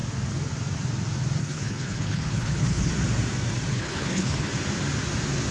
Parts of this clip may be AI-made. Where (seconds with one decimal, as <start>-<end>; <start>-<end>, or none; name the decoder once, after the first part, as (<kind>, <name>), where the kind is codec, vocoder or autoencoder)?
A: 1.4-2.9 (codec, HILCodec); 3.7-4.5